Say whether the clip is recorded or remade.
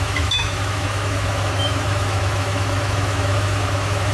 remade